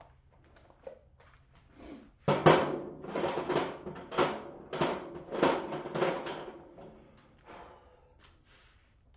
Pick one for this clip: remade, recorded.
recorded